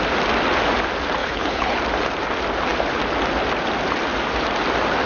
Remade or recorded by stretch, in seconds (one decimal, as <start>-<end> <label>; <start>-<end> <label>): 0.0-1.2 recorded; 1.2-1.8 remade; 1.8-5.1 recorded